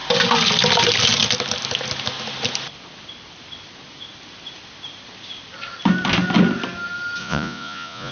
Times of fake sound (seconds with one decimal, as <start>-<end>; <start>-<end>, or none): 7.2-8.1